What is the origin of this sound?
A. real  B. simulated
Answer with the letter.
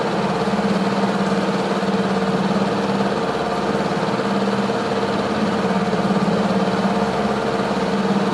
A